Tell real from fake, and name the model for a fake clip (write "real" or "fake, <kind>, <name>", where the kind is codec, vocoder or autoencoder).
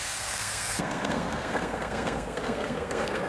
fake, codec, SNAC